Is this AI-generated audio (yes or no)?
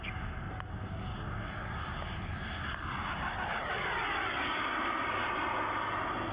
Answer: no